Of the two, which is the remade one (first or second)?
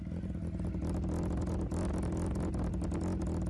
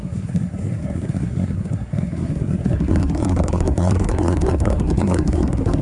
second